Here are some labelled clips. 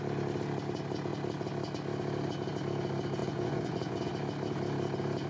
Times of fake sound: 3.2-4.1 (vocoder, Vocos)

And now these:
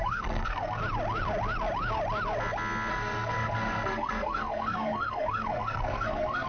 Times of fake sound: 0.0-0.8 (codec, SNAC); 2.9-6.5

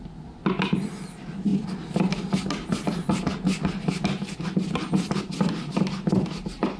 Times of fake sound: none

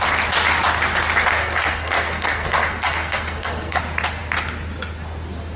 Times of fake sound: 1.4-3.8 (codec, SNAC)

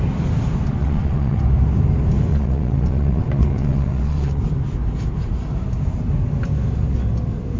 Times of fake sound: 0.8-1.4 (vocoder, WaveNeXt); 2.3-4.4

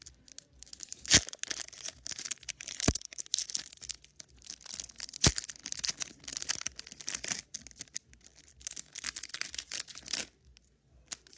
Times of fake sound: 2.5-3.2 (codec, HILCodec)

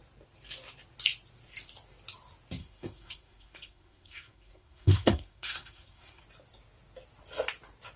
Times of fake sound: 2.6-6.2 (codec, SNAC)

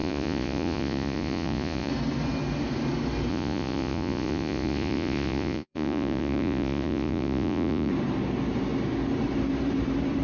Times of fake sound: 0.0-1.9 (vocoder, Vocos); 3.3-7.9